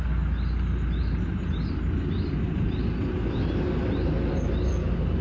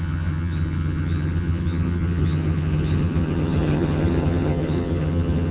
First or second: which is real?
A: first